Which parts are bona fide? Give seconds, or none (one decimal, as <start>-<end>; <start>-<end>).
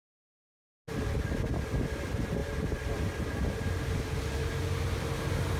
0.0-5.6